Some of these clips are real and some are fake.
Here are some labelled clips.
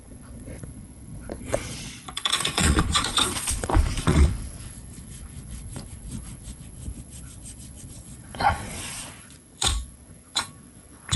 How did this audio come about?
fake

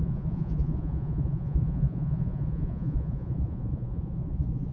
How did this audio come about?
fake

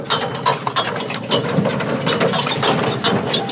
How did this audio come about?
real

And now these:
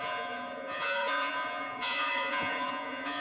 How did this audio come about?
fake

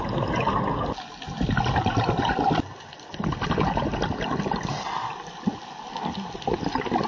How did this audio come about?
real